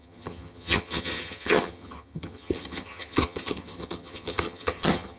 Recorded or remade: remade